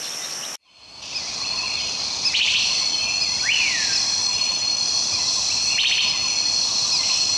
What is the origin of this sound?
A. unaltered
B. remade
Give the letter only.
A